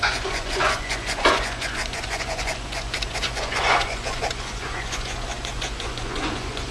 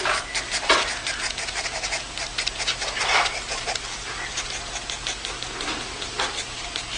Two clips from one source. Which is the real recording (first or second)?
second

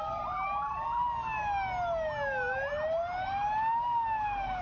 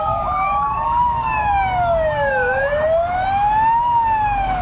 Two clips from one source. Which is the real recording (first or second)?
first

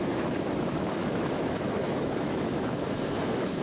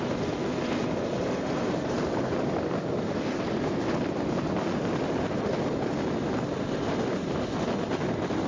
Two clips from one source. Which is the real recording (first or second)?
second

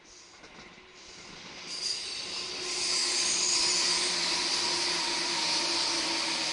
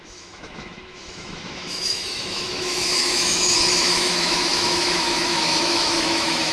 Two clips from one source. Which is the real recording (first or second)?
first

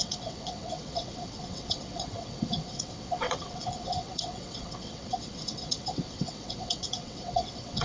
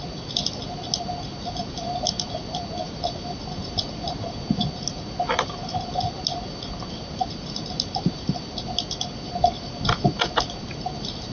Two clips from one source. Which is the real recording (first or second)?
second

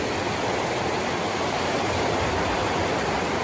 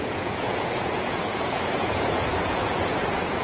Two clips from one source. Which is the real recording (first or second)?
first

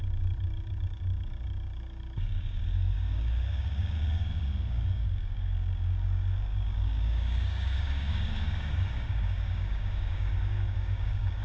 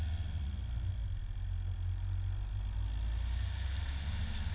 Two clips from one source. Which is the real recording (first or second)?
second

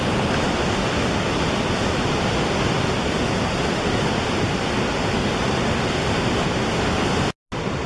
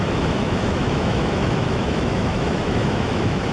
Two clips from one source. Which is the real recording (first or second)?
first